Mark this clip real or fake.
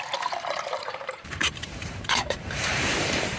fake